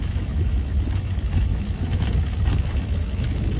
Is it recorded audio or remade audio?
remade